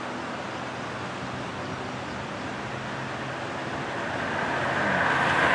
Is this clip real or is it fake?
real